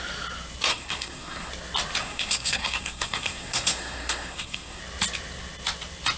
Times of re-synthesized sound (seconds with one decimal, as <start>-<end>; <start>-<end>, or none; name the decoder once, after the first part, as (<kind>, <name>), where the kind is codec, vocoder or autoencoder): 0.7-1.5 (codec, SNAC); 2.0-4.8

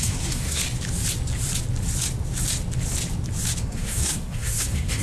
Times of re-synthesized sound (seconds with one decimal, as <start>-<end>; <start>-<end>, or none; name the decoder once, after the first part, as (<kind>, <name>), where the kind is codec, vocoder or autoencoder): 0.0-0.6 (codec, SNAC); 3.6-5.0

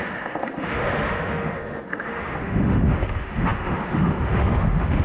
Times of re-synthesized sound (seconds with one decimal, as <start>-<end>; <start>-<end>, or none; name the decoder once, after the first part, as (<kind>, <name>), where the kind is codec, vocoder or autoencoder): 0.0-5.0 (autoencoder, DAC-VAE)

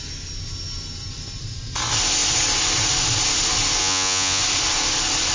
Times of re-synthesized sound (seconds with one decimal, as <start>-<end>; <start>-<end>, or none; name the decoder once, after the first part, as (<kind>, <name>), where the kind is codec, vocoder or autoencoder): 3.8-4.4 (vocoder, Vocos)

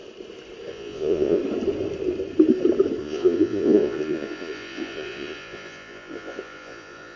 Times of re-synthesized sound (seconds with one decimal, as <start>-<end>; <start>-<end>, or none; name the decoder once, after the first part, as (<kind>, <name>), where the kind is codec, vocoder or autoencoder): 0.7-1.4 (vocoder, Vocos); 3.0-7.2